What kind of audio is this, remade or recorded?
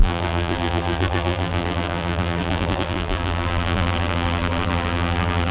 remade